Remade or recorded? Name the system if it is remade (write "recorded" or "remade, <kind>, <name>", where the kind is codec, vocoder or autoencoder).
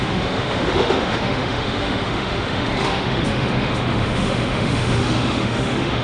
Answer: remade, autoencoder, DAC-VAE